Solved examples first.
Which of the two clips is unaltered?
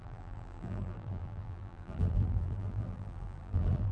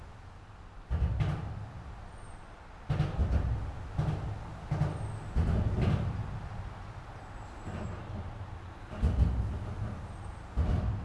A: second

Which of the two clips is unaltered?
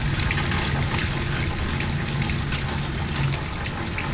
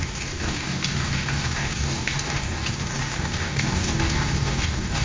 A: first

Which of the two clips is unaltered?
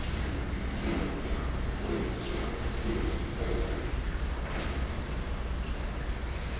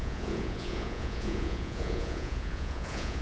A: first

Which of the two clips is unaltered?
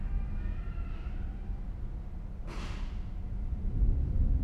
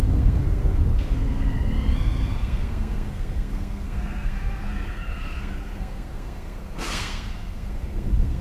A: first